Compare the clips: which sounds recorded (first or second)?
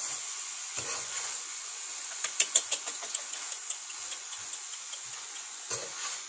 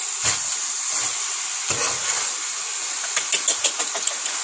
second